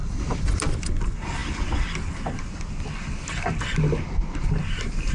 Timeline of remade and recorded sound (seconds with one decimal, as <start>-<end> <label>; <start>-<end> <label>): 0.0-5.1 recorded